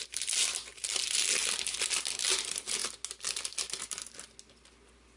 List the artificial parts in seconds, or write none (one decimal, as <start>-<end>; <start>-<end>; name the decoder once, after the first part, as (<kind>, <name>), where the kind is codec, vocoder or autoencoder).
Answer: none

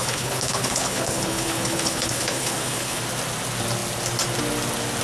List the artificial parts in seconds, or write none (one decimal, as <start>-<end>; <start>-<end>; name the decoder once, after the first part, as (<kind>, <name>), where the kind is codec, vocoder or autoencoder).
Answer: 0.0-3.0 (codec, HILCodec)

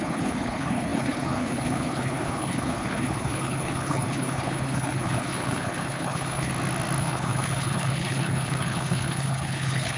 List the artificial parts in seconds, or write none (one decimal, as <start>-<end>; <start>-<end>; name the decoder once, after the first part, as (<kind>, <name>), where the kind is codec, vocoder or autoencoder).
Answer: 0.0-6.5 (codec, HILCodec); 7.0-10.0